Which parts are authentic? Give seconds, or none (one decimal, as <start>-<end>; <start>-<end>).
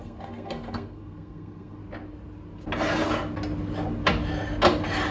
1.8-5.1